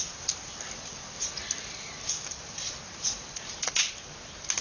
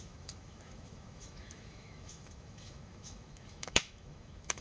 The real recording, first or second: first